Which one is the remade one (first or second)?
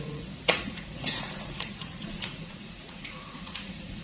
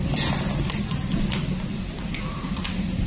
first